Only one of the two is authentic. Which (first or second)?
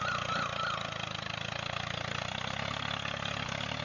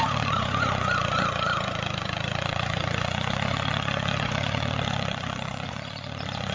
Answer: first